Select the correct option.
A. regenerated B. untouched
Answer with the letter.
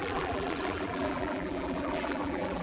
A